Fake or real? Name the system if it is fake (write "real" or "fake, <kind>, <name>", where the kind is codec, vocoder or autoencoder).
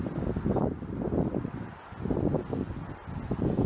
real